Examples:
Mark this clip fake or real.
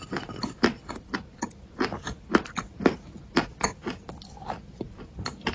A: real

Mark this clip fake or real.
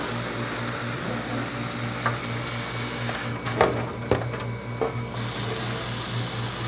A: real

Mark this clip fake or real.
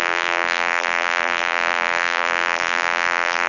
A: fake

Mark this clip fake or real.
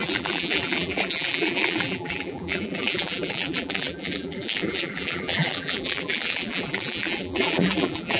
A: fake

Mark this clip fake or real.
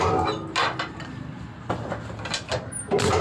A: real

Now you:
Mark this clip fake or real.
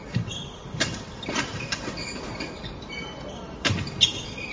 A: real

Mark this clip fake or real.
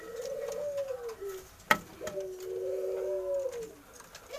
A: real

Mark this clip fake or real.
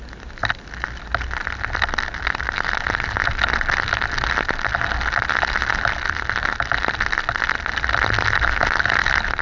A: real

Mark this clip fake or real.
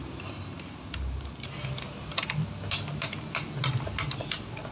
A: real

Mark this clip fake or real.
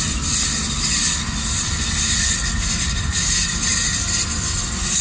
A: real